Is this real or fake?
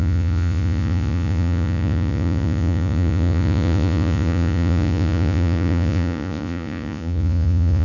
fake